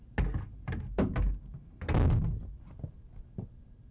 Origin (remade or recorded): recorded